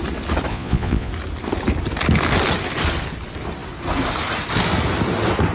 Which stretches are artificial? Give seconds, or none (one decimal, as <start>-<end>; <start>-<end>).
0.5-1.1